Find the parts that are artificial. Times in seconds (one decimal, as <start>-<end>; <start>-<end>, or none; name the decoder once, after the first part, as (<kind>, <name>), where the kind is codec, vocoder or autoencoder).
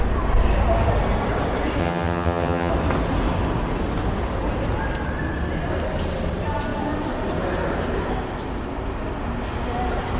1.8-2.7 (vocoder, HiFi-GAN)